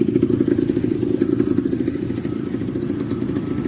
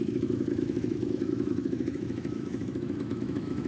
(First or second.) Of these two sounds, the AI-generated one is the second